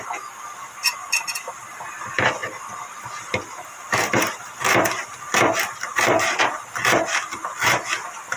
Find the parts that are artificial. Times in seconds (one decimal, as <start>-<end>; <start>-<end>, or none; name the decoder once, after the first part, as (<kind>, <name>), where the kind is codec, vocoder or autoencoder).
0.8-1.6 (vocoder, BigVGAN v2); 2.4-4.6; 5.9-6.7